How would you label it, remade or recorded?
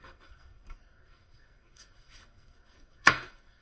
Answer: remade